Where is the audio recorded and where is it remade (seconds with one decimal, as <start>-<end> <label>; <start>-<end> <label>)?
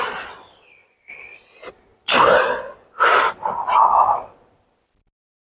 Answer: 0.0-5.5 recorded